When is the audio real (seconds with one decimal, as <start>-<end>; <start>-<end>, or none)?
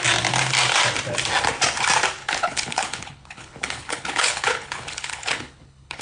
0.0-2.2